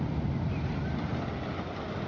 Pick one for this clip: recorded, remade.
recorded